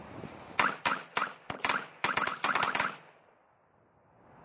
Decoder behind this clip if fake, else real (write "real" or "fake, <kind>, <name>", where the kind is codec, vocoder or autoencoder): real